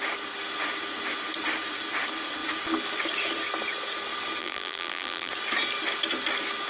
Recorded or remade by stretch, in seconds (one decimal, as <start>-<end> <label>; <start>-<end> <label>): 0.0-4.4 recorded; 4.4-5.3 remade; 5.3-6.7 recorded